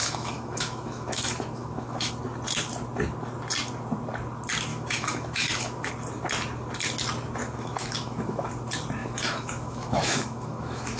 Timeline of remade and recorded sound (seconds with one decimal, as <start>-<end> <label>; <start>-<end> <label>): 0.0-2.1 remade; 2.1-4.7 recorded; 4.7-5.9 remade; 5.9-7.4 recorded; 7.4-8.5 remade; 8.5-9.0 recorded; 9.0-11.0 remade